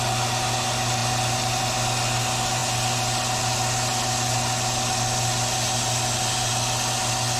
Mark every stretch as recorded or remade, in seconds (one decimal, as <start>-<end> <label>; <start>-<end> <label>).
0.0-1.0 recorded; 1.0-1.6 remade; 1.6-7.4 recorded